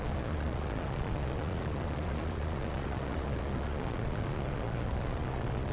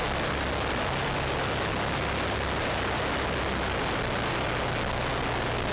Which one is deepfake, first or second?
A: first